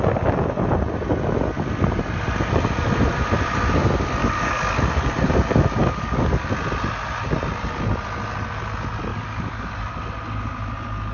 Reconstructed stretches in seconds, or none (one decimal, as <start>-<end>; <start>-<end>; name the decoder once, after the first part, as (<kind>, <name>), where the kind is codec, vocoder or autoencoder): 4.2-5.1 (codec, DAC); 5.8-6.5; 9.1-9.7